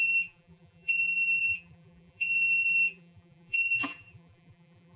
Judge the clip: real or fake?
fake